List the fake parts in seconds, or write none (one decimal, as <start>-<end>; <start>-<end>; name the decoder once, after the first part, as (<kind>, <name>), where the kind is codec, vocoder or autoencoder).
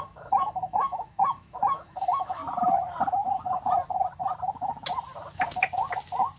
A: 0.0-2.4 (autoencoder, DAC-VAE)